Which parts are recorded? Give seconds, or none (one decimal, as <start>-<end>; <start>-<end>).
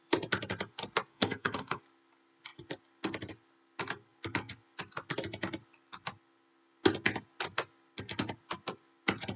0.0-1.1; 1.8-9.4